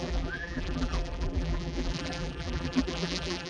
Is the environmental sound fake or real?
fake